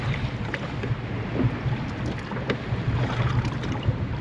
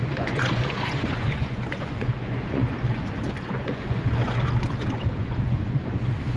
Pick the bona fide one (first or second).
first